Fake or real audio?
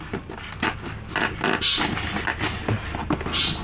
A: real